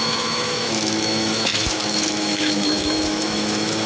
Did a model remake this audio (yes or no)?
yes